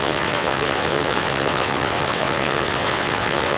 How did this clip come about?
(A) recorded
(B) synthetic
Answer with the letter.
B